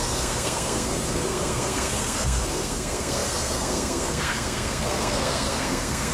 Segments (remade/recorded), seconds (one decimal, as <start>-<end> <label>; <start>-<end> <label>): 0.0-6.1 remade